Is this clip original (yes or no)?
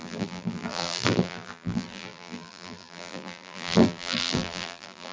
no